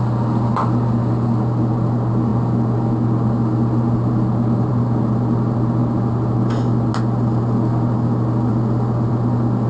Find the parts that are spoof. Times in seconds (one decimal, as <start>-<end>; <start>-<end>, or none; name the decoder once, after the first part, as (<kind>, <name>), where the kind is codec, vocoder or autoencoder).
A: none